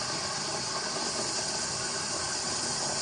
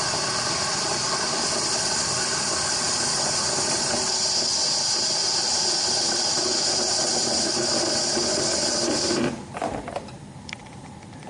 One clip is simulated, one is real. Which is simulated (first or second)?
second